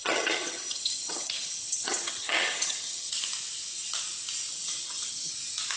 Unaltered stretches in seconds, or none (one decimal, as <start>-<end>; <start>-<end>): 3.2-4.5; 5.3-5.8

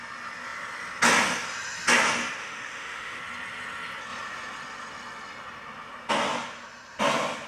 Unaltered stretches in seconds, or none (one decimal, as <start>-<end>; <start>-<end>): 0.0-2.4; 3.2-7.5

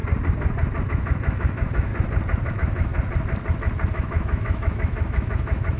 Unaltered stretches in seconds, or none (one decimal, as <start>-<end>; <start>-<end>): 0.0-0.8; 1.9-2.5; 2.9-3.9

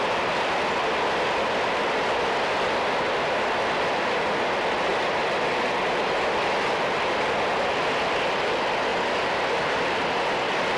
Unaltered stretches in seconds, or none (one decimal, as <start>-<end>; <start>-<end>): 0.0-4.9; 5.7-8.9; 9.6-10.8

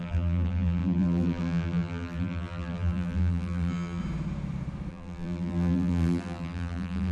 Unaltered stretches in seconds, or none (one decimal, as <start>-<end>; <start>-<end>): 4.0-4.9

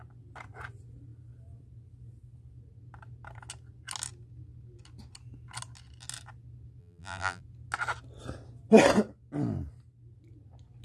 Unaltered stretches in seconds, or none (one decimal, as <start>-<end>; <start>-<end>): 0.0-6.8; 7.4-10.8

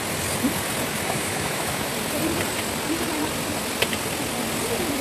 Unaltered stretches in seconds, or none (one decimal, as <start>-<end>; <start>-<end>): 0.0-1.1; 1.9-5.0